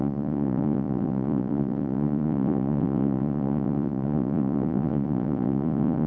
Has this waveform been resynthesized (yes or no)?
yes